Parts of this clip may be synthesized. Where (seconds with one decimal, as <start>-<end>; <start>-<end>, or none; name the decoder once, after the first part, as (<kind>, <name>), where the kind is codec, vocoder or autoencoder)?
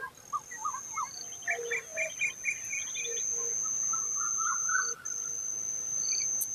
none